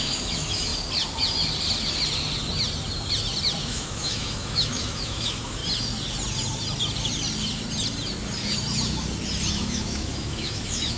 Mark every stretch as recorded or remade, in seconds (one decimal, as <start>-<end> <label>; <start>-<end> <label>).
0.0-0.7 remade; 0.7-3.6 recorded; 3.6-5.6 remade; 5.6-9.5 recorded; 9.5-11.0 remade